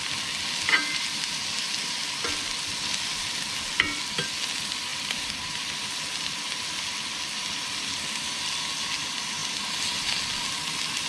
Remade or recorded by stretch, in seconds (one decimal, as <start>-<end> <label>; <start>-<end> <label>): 0.0-11.1 recorded